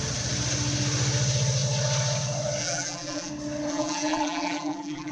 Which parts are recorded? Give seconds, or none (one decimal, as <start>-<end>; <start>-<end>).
0.0-2.6; 3.3-3.7